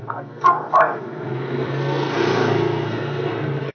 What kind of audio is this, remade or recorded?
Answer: remade